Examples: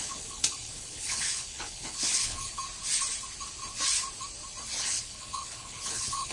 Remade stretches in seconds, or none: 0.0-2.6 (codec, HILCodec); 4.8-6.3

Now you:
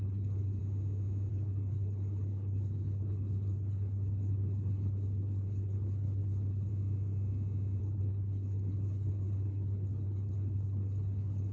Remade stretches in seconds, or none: 0.0-0.6 (codec, HILCodec); 1.3-6.7; 7.8-11.5